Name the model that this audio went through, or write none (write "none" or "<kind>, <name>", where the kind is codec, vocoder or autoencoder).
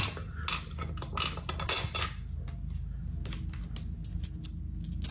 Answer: none